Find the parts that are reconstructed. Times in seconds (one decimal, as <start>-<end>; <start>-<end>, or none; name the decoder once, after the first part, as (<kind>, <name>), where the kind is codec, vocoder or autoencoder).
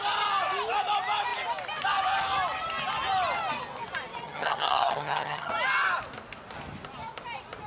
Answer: 4.2-5.5 (vocoder, HiFi-GAN)